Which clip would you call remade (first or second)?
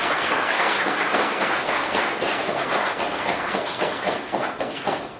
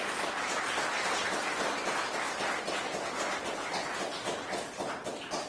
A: first